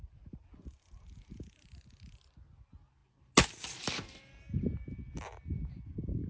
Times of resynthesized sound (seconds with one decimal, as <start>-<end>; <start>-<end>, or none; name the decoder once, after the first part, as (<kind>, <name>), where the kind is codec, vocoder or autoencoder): none